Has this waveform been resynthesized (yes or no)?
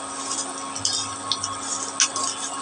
no